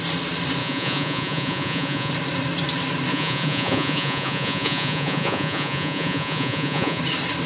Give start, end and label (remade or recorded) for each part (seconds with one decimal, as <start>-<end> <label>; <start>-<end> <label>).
0.0-0.6 recorded; 0.6-2.1 remade; 2.1-3.1 recorded; 3.1-7.0 remade; 7.0-7.5 recorded